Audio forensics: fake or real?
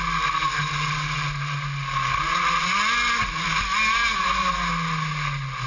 real